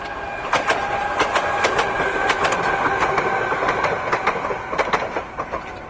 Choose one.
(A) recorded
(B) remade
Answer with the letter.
A